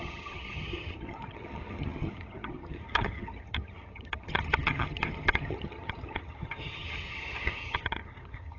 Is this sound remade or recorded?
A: remade